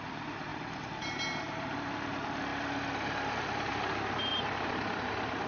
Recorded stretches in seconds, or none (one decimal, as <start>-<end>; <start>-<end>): 0.0-0.5; 1.9-4.3